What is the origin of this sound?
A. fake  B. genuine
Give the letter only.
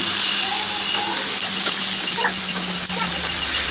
B